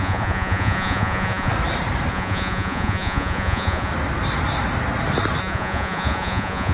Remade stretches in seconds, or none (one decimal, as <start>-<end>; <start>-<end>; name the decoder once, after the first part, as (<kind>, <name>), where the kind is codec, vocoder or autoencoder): 0.0-1.5 (vocoder, Vocos); 2.1-3.9; 5.4-6.7